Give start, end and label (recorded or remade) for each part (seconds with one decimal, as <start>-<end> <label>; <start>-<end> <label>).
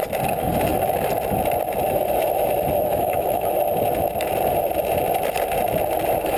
0.0-2.9 recorded; 2.9-3.5 remade; 3.5-6.4 recorded